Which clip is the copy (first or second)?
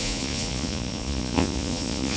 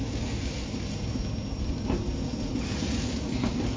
first